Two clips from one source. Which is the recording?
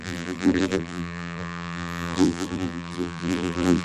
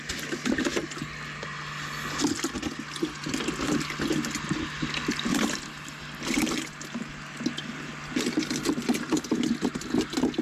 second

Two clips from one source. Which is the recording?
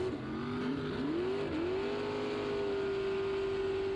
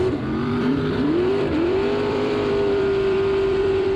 first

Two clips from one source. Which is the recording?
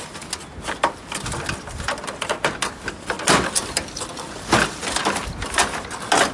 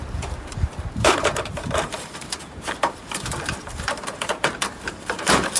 first